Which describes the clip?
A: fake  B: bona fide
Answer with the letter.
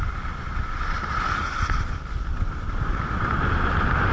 A